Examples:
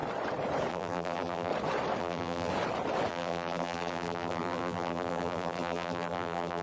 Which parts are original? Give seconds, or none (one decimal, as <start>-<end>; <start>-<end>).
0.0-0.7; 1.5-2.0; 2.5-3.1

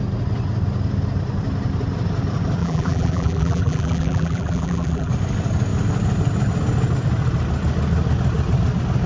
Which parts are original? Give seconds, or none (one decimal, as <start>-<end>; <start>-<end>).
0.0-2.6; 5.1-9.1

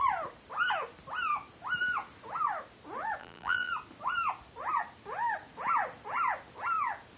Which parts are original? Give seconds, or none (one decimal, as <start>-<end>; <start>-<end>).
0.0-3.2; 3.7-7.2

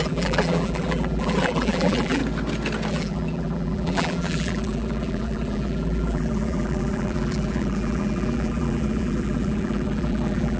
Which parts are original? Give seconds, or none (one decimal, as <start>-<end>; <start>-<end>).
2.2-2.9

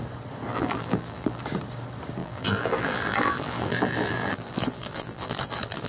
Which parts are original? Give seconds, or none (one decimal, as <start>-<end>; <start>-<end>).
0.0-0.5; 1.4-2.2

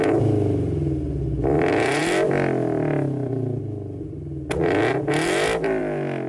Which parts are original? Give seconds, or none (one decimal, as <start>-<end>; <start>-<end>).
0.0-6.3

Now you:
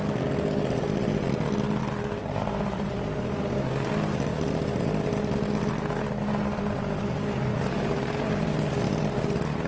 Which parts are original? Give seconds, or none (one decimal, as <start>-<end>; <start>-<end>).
0.0-2.2; 2.9-7.5; 8.8-9.7

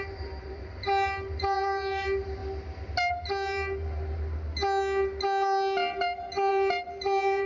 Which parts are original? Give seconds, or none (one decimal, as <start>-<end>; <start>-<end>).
2.4-3.0; 4.5-6.5